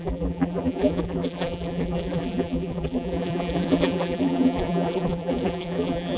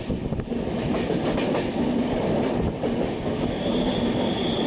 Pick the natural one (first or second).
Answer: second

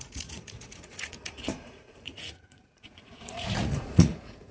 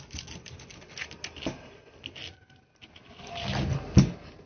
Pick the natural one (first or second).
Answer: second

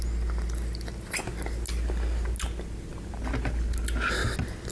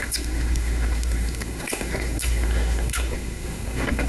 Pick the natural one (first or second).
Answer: first